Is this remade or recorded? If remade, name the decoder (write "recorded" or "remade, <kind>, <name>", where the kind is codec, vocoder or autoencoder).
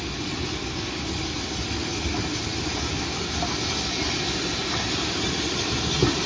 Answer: recorded